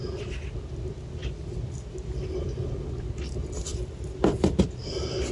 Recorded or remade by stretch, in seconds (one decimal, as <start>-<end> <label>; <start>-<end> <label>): 0.0-5.3 recorded